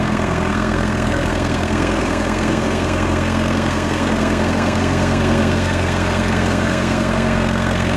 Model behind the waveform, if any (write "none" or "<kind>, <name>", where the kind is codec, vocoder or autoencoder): codec, SNAC